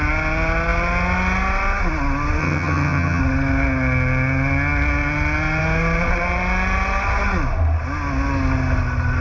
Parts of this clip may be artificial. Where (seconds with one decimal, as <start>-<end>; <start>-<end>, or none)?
2.4-3.2